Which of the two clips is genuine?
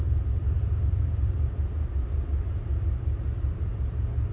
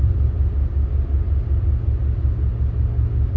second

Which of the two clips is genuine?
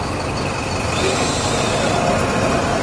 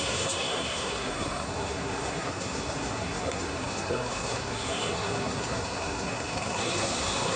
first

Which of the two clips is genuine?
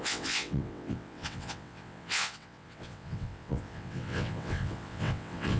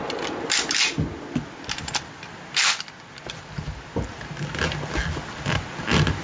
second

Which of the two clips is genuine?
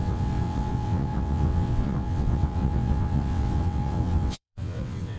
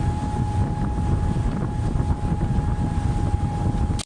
second